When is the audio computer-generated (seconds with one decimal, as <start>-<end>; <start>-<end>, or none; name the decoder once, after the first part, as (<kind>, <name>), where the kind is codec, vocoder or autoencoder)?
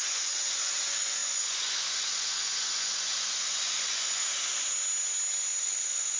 0.0-4.2 (vocoder, Vocos); 5.6-6.2